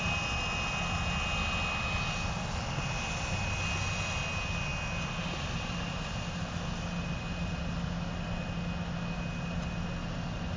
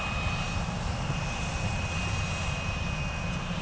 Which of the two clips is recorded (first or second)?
first